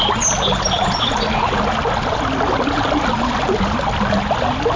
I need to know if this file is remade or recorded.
recorded